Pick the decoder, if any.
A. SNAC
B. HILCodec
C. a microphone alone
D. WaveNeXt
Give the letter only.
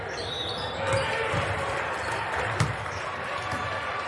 C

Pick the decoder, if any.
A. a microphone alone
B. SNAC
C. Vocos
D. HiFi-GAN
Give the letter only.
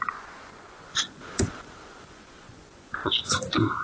C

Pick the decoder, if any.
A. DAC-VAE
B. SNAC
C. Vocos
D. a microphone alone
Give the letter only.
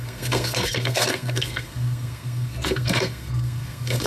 B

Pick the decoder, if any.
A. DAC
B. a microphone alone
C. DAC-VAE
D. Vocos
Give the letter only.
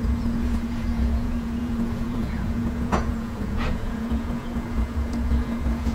D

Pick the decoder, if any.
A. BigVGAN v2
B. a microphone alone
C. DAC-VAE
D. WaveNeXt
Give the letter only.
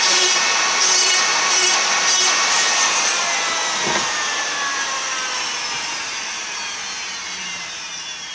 A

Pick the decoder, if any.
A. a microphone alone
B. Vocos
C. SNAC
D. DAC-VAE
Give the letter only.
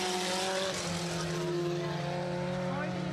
A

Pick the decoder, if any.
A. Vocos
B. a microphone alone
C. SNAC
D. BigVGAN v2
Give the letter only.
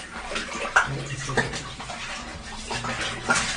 B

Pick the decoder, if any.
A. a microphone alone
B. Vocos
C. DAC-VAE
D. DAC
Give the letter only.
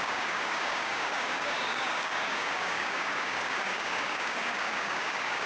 D